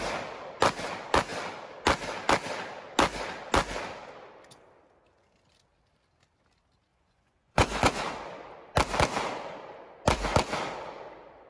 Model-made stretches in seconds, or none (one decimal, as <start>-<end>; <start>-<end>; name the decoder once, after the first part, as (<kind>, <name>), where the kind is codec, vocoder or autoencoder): 6.9-8.0 (vocoder, Vocos)